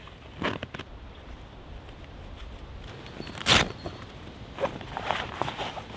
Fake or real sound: real